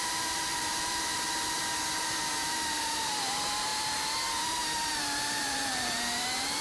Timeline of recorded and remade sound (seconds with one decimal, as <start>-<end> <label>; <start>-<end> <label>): 0.0-6.6 remade